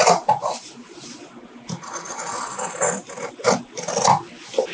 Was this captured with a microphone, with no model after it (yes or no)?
yes